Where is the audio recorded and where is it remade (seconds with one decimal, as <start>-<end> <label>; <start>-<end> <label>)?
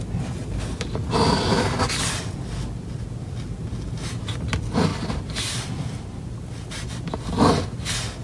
0.0-4.9 recorded; 4.9-6.7 remade; 6.7-8.2 recorded